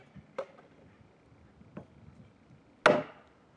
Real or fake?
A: real